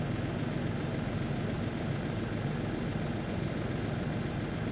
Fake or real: real